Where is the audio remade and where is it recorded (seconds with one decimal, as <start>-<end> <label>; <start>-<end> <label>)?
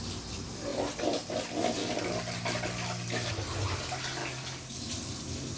0.0-4.2 recorded; 4.2-4.9 remade; 4.9-5.6 recorded